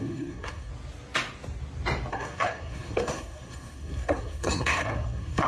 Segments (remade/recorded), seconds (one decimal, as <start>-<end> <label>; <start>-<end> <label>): 0.0-0.7 remade; 0.7-2.1 recorded; 2.1-5.5 remade

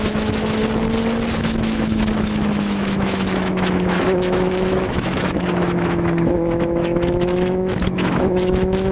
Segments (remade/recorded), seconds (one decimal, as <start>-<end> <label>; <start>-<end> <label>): 0.0-0.6 remade; 0.6-1.4 recorded; 1.4-8.9 remade